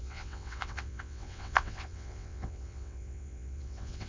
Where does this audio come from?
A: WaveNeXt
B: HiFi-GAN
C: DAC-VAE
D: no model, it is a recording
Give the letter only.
A